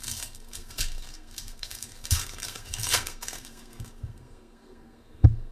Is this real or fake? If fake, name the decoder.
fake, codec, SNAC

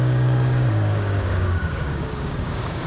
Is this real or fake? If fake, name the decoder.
fake, codec, DAC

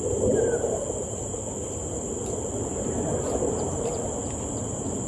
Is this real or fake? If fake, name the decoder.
real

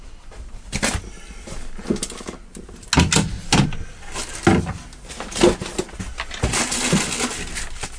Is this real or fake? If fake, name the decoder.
real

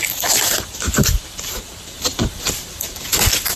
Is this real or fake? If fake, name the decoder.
fake, vocoder, BigVGAN v2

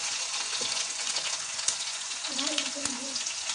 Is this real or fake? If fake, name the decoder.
fake, vocoder, Vocos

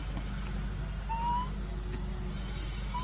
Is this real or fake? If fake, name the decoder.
real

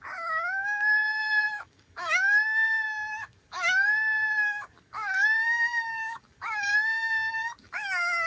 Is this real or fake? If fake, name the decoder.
fake, codec, DAC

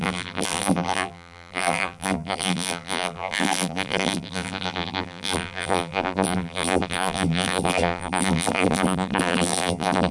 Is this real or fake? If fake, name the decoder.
fake, vocoder, BigVGAN v2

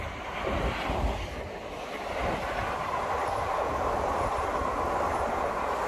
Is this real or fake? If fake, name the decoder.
real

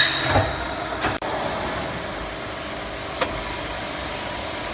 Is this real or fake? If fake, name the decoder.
real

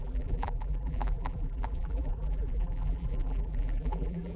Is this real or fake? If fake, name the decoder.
fake, vocoder, BigVGAN v2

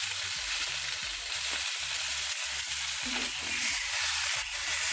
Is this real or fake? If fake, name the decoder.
fake, vocoder, BigVGAN v2